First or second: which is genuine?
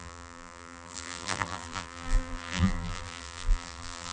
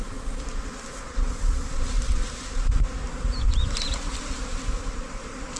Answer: second